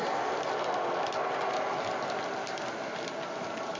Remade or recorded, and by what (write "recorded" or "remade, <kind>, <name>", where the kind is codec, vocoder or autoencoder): recorded